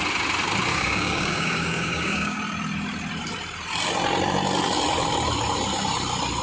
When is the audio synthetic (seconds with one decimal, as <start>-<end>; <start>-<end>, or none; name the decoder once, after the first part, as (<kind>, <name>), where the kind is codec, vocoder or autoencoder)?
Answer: 0.7-2.4 (codec, DAC)